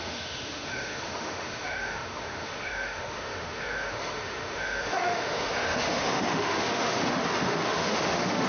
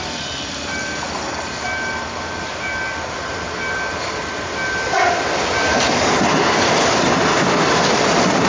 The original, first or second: second